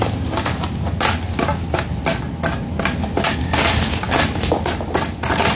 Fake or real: real